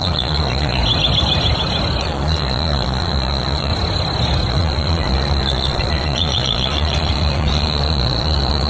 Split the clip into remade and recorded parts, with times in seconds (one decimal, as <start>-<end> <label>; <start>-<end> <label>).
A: 0.0-0.8 remade; 0.8-2.0 recorded; 2.0-3.7 remade; 3.7-4.5 recorded; 4.5-8.7 remade